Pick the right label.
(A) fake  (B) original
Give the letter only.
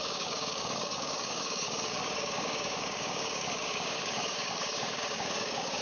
A